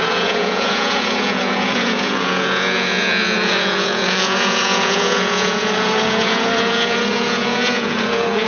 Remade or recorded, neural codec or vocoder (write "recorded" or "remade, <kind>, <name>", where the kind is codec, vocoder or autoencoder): remade, vocoder, Vocos